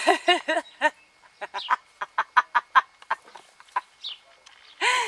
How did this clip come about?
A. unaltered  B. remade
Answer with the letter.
A